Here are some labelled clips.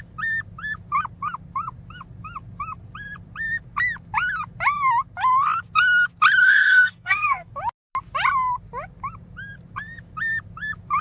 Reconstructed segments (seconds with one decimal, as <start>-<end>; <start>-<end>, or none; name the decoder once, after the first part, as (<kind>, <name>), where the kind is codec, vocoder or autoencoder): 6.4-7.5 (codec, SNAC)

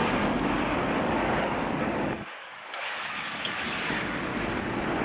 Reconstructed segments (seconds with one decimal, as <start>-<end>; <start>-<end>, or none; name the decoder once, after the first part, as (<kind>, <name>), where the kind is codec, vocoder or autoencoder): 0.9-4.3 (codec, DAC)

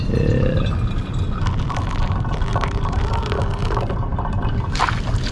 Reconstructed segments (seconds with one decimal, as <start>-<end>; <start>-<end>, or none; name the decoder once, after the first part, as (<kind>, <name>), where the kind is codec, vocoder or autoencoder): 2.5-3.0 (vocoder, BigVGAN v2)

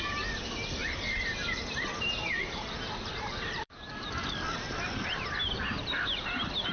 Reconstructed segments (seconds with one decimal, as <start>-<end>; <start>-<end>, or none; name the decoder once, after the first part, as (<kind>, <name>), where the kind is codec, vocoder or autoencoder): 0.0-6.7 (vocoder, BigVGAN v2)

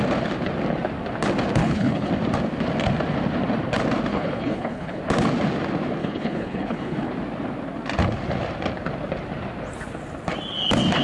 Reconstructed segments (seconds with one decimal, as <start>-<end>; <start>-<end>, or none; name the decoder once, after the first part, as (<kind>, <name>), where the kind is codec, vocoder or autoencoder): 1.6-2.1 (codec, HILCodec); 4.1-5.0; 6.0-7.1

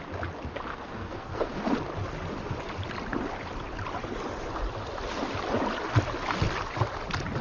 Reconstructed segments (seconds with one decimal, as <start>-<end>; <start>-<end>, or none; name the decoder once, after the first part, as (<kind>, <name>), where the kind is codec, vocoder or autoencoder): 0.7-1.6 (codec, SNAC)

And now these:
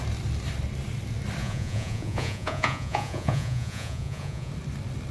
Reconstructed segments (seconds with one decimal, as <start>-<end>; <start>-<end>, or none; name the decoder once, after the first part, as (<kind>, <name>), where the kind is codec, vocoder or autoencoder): 1.4-4.5 (vocoder, Vocos)

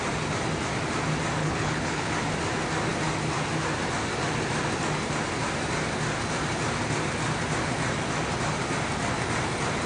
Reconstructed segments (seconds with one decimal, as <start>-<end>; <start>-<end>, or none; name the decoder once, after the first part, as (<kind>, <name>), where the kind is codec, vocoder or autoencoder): 1.4-2.1 (codec, HILCodec)